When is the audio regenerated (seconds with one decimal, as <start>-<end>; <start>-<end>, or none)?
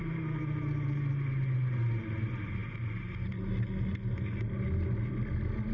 none